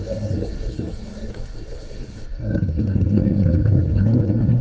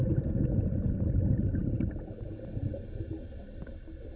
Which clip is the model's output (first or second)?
first